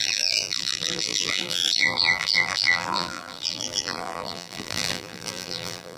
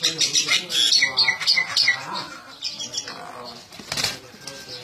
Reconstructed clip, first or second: first